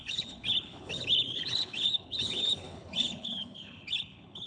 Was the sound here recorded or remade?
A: remade